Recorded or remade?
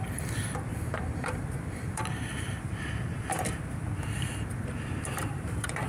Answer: remade